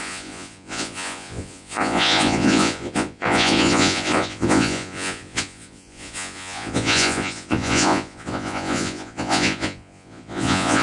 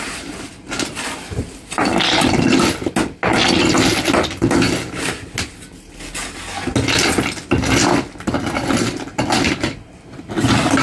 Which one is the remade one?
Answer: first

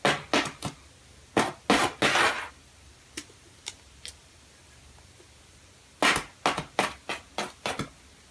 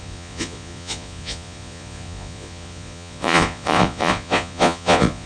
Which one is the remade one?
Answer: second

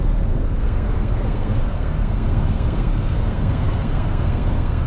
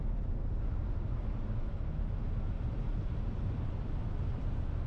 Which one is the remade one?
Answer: first